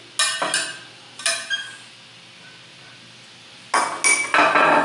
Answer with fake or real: real